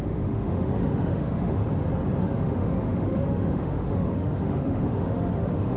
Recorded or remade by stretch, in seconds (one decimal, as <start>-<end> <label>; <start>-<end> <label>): 0.0-1.6 remade; 1.6-2.2 recorded; 2.2-5.8 remade

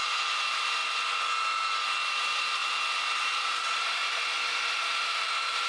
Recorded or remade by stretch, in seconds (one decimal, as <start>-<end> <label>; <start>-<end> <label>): 0.0-0.8 remade; 0.8-2.2 recorded; 2.2-4.0 remade; 4.0-4.8 recorded; 4.8-5.7 remade